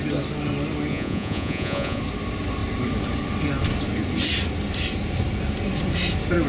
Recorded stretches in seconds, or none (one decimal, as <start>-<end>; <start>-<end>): 0.0-0.9; 2.0-6.5